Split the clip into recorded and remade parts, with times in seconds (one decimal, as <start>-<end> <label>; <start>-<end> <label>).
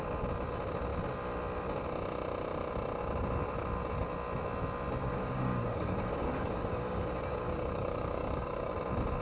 0.0-5.0 recorded; 5.0-8.7 remade; 8.7-9.2 recorded